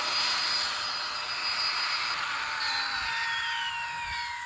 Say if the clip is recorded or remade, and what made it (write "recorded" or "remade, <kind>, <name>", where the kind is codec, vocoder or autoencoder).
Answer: recorded